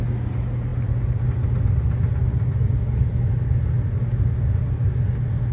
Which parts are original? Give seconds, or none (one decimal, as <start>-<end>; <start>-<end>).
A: 0.0-5.5